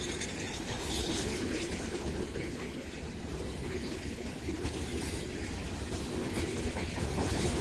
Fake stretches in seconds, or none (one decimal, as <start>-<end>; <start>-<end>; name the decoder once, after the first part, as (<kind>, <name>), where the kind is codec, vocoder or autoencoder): 0.4-2.9 (codec, HILCodec); 3.6-4.7; 6.2-7.6